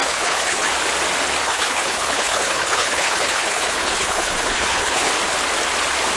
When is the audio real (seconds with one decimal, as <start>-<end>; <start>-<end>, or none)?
0.7-1.4; 5.1-6.2